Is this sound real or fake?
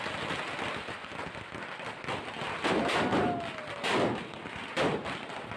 real